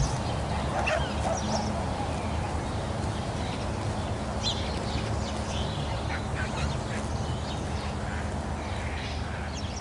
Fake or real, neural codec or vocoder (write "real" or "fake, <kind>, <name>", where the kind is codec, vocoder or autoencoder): real